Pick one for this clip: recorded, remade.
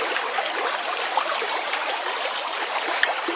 recorded